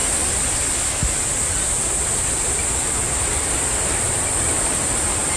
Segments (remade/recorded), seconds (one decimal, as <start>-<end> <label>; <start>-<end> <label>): 0.0-5.4 recorded